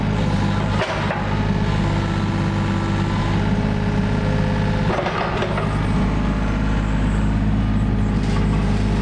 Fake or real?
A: real